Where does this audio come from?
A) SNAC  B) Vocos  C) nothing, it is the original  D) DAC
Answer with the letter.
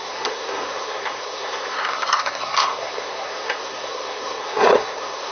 A